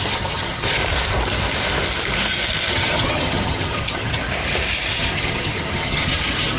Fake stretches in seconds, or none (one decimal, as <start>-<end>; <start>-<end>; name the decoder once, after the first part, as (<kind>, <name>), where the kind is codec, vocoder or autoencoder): 0.0-0.8 (vocoder, HiFi-GAN); 2.7-4.2; 4.9-6.6